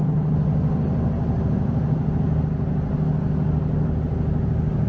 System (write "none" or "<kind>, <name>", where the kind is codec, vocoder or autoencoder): none